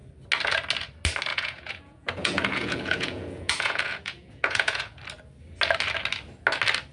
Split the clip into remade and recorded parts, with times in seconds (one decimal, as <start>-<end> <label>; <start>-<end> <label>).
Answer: 0.0-1.3 recorded; 1.3-5.0 remade; 5.0-6.9 recorded